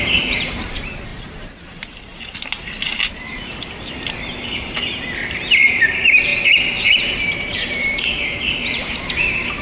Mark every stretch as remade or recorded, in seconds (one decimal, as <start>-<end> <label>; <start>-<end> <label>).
0.0-1.1 remade; 1.1-4.1 recorded; 4.1-9.6 remade